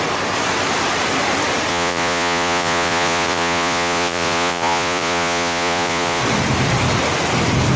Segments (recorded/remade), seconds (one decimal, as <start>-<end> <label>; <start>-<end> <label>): 0.0-1.7 recorded; 1.7-6.2 remade; 6.2-7.8 recorded